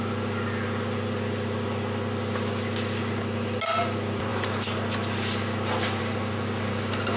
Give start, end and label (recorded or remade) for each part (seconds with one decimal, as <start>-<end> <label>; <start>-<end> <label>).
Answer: 0.0-7.2 recorded